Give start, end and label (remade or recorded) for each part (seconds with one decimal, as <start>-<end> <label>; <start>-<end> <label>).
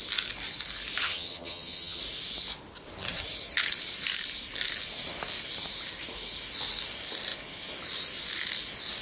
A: 0.0-1.0 recorded; 1.0-2.0 remade; 2.0-9.0 recorded